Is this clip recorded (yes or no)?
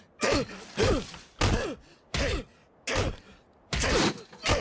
yes